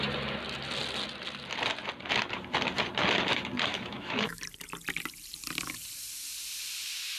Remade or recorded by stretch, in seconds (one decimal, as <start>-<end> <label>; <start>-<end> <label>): 0.0-3.7 recorded; 3.7-4.4 remade; 4.4-7.2 recorded